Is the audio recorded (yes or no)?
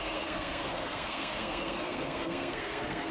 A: no